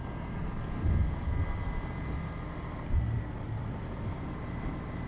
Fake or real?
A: real